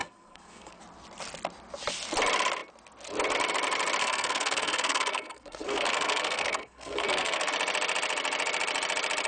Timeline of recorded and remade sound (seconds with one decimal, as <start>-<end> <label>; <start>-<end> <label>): 0.0-0.8 remade; 0.8-4.0 recorded; 4.0-7.5 remade; 7.5-9.3 recorded